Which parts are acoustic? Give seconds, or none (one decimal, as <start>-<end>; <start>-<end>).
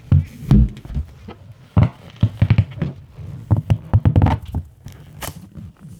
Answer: 0.0-6.0